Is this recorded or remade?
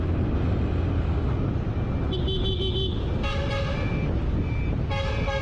recorded